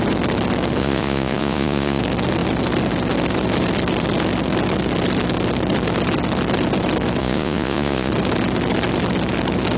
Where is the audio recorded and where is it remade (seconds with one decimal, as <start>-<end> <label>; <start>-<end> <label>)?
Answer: 0.0-0.8 recorded; 0.8-2.0 remade; 2.0-7.2 recorded; 7.2-8.1 remade; 8.1-9.8 recorded